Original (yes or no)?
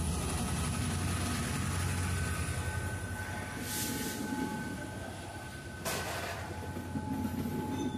yes